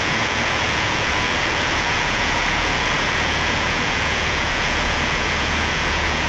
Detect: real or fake fake